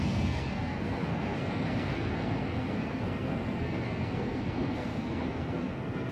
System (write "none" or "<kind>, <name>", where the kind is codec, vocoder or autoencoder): codec, SNAC